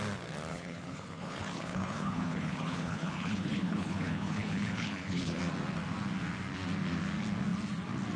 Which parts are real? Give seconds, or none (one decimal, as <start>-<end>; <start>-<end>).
0.0-0.5; 5.4-8.2